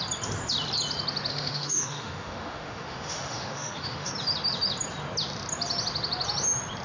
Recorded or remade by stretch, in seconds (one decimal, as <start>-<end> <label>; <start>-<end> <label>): 0.0-1.3 recorded; 1.3-4.1 remade; 4.1-6.8 recorded